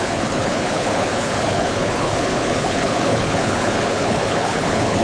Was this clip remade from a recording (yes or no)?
yes